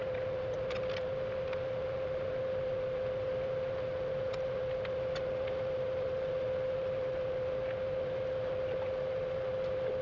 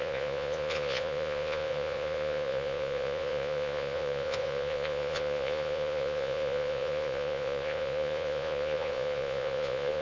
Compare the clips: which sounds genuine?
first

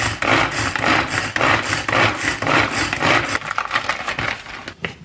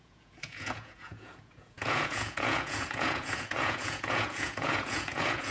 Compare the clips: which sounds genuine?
first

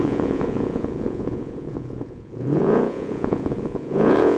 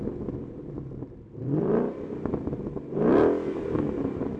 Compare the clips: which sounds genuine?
second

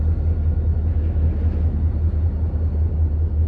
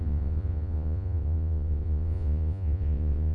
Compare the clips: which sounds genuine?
first